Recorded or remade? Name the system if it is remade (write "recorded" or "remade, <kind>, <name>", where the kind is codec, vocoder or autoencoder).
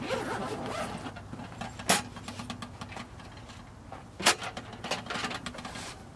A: recorded